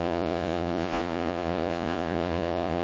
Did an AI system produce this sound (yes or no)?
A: yes